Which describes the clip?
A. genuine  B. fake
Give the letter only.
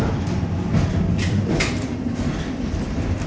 B